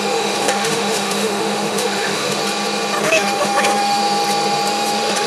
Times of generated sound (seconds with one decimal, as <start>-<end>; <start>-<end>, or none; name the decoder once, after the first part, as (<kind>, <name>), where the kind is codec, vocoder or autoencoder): 0.0-2.4 (autoencoder, DAC-VAE); 3.0-4.0; 4.7-5.3